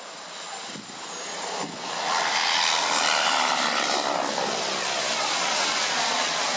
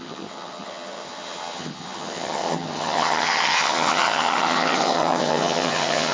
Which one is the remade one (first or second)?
second